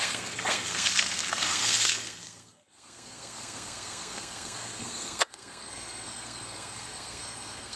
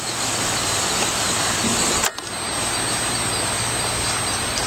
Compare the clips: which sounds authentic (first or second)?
second